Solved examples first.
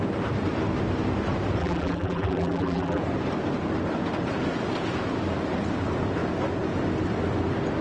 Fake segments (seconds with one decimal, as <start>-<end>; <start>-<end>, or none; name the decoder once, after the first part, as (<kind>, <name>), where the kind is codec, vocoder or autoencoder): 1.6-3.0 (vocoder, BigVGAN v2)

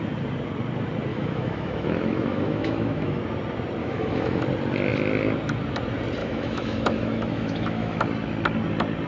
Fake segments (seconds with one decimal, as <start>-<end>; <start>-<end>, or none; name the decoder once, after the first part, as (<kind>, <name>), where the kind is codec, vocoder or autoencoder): 1.1-3.2 (autoencoder, DAC-VAE); 3.8-4.4; 6.2-8.0

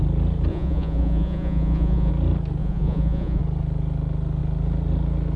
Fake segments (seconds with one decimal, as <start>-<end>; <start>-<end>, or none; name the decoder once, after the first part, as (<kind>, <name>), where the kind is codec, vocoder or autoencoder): 0.5-2.1 (vocoder, Vocos); 2.6-3.4

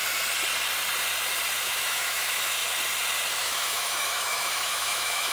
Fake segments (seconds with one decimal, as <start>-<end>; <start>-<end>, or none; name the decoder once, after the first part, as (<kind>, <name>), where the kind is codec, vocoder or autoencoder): 1.6-2.6 (autoencoder, DAC-VAE); 3.3-5.3

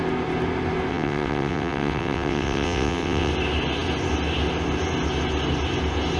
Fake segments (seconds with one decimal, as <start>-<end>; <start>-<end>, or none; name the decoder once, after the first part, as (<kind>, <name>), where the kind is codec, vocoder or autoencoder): 0.9-3.3 (vocoder, WaveNeXt)

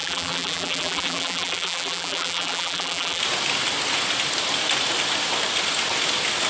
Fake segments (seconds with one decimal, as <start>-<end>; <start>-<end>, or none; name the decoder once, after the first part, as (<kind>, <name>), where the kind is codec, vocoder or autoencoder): 0.0-3.2 (vocoder, BigVGAN v2)